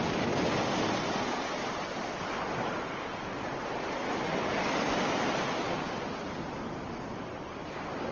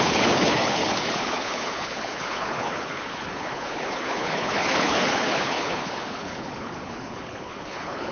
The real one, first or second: first